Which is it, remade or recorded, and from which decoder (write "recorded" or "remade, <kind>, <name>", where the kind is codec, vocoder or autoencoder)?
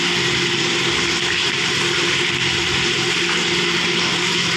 remade, vocoder, BigVGAN v2